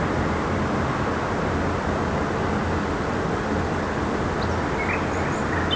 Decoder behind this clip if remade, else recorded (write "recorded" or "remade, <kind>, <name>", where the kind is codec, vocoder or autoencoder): recorded